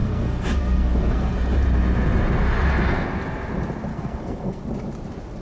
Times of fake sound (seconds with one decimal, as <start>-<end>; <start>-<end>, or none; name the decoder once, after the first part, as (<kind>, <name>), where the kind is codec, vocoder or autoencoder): 0.0-1.3 (codec, SNAC); 3.9-4.6